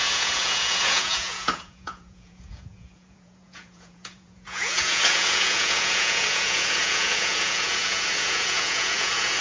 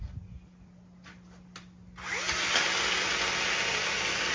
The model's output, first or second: first